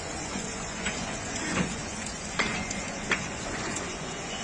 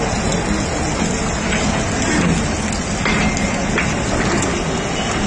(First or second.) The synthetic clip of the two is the first